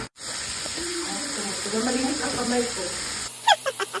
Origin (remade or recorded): remade